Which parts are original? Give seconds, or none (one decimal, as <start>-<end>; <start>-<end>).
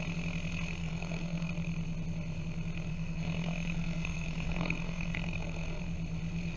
0.0-0.8; 1.5-2.9; 5.8-6.6